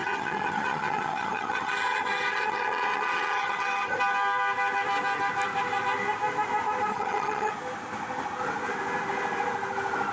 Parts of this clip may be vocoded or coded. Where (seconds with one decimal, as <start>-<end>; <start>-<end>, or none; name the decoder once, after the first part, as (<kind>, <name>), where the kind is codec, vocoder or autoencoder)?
0.0-4.0 (vocoder, HiFi-GAN); 6.9-7.5